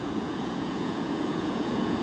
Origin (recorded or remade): remade